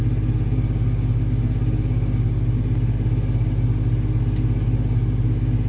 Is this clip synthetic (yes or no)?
no